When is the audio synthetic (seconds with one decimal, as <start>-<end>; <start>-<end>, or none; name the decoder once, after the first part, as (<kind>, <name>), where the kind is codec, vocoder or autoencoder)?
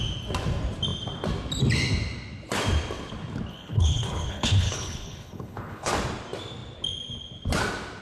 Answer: 3.5-5.9 (codec, HILCodec)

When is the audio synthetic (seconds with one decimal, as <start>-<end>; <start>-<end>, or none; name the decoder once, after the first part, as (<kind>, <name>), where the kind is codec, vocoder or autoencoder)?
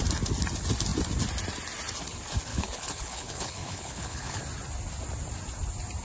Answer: 2.5-4.4 (codec, HILCodec)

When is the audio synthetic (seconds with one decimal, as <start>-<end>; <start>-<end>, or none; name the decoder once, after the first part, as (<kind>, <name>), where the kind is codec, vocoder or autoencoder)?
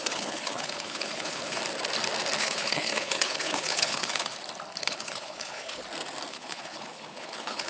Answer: 0.0-1.6 (codec, HILCodec); 2.4-4.3; 4.8-5.8; 6.3-7.7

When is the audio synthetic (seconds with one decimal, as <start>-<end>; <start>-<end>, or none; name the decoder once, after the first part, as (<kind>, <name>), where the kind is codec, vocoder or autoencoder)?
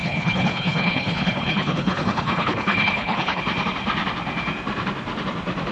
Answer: 0.0-3.4 (codec, HILCodec)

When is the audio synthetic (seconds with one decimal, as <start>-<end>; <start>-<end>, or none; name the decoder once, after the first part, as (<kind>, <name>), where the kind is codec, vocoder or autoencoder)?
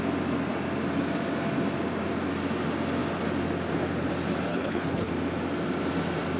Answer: 4.5-5.1 (codec, HILCodec)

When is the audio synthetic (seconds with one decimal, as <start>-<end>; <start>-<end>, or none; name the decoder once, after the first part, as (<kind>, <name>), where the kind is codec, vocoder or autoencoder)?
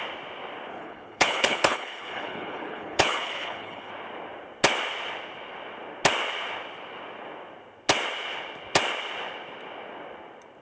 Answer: 0.7-3.9 (codec, HILCodec)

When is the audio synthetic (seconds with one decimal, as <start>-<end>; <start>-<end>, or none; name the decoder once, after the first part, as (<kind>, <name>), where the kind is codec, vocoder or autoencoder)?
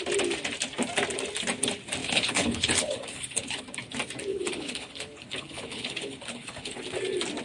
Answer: 2.0-3.6 (codec, HILCodec); 4.3-6.8